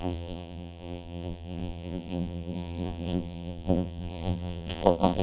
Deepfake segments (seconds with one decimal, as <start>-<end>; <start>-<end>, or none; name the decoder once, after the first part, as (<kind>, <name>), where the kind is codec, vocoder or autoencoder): 0.0-5.2 (vocoder, BigVGAN v2)